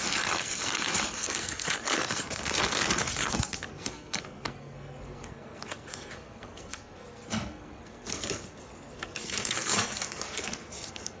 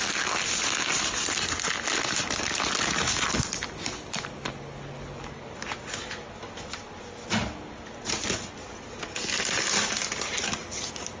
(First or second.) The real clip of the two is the second